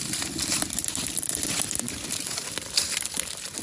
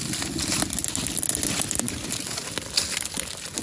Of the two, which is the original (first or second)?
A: second